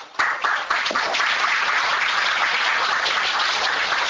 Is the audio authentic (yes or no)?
no